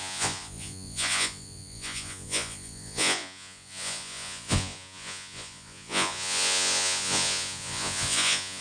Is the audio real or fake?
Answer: fake